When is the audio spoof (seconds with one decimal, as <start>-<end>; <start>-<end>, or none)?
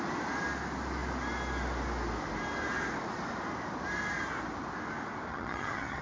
5.3-6.0